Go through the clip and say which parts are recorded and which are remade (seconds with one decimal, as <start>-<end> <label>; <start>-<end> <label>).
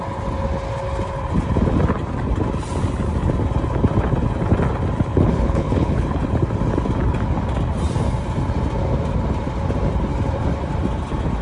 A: 0.0-5.1 recorded; 5.1-6.2 remade; 6.2-11.4 recorded